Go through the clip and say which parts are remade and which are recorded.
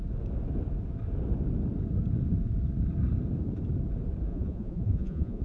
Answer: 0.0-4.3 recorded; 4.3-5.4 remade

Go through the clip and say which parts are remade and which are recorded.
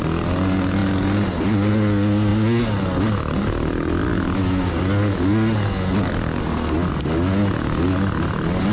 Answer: 0.0-8.7 recorded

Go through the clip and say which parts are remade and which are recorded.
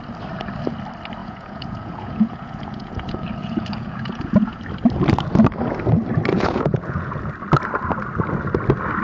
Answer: 0.0-1.2 recorded; 1.2-4.6 remade; 4.6-6.3 recorded; 6.3-7.3 remade; 7.3-9.0 recorded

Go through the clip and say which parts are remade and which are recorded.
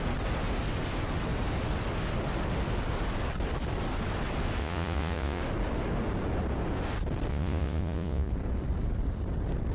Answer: 0.0-4.6 recorded; 4.6-5.4 remade; 5.4-7.3 recorded; 7.3-8.3 remade; 8.3-9.7 recorded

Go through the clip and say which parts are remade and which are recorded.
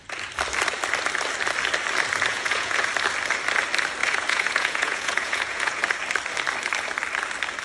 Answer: 0.0-2.3 recorded; 2.3-2.9 remade; 2.9-4.0 recorded; 4.0-5.8 remade; 5.8-7.6 recorded